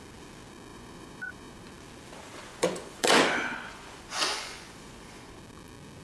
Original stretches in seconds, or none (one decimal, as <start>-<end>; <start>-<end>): 0.0-0.7; 1.7-2.5; 5.4-6.0